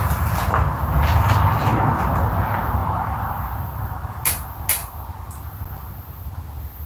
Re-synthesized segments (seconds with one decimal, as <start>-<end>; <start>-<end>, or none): 2.8-4.2